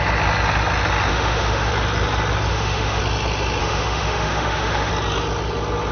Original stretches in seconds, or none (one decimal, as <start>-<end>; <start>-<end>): 0.0-1.1; 1.7-2.5; 3.0-3.6; 4.9-5.9